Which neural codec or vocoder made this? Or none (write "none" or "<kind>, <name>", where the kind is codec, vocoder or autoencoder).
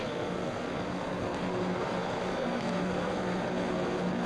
codec, SNAC